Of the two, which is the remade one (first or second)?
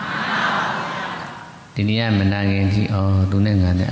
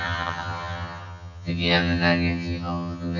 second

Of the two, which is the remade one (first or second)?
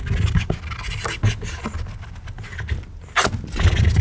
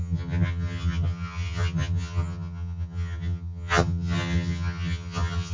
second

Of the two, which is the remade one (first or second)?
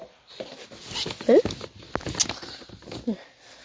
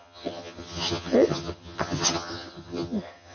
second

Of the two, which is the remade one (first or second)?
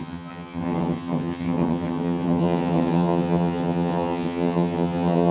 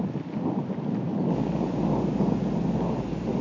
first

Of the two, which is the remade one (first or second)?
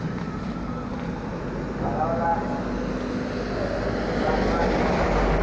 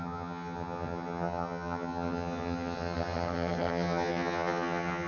second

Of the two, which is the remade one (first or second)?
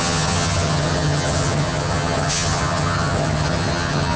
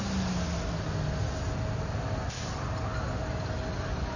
first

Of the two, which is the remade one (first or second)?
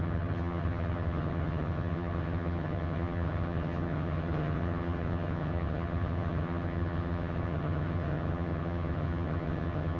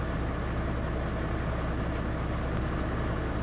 first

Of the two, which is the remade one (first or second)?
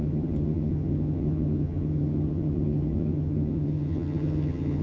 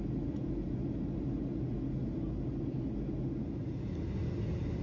first